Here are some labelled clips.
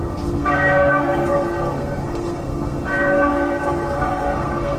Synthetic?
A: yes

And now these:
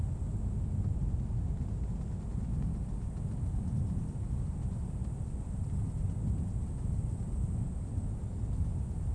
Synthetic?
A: no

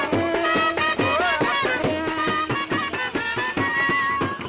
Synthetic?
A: no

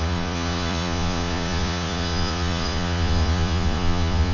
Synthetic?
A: yes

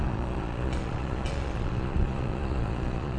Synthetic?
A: yes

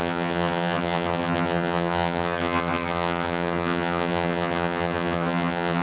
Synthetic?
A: yes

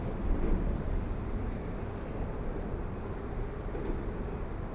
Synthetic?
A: no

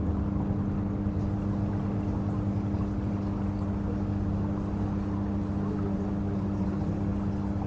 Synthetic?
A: no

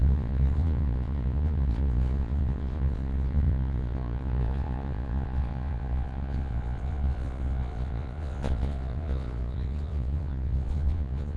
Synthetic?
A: yes